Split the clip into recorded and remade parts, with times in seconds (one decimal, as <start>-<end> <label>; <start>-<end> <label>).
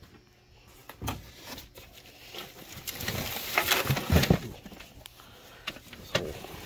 0.0-6.7 recorded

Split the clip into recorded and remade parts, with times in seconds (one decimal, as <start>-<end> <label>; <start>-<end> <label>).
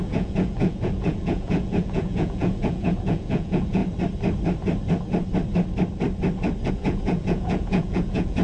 0.0-3.8 remade; 3.8-6.7 recorded; 6.7-8.4 remade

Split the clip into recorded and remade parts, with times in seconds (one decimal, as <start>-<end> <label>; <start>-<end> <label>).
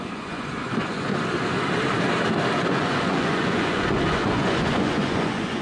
0.0-1.1 remade; 1.1-2.7 recorded; 2.7-5.6 remade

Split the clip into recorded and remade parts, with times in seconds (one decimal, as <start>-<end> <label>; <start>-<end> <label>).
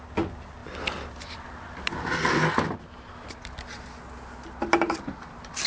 0.0-5.7 recorded